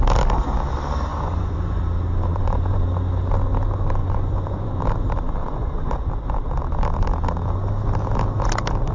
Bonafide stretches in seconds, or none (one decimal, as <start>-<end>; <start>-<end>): 0.0-1.1; 1.8-2.3; 2.8-4.0; 4.8-5.4; 6.1-8.9